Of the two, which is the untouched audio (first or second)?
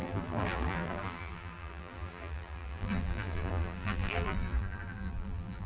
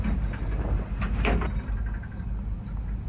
second